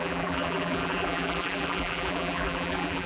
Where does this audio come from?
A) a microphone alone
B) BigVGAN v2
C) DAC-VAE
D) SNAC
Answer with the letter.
B